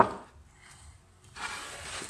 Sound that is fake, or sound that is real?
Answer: real